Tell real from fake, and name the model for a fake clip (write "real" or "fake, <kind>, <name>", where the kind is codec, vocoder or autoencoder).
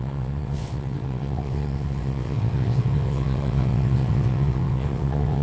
fake, vocoder, WaveNeXt